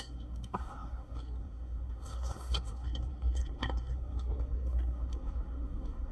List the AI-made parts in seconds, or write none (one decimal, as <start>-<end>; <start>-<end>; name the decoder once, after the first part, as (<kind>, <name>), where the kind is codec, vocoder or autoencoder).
0.0-6.1 (codec, SNAC)